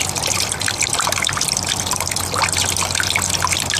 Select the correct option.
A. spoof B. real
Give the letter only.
B